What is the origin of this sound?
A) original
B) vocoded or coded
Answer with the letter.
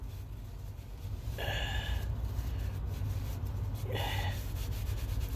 A